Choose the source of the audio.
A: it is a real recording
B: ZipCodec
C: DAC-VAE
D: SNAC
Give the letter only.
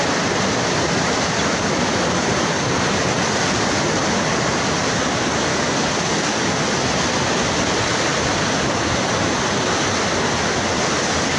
A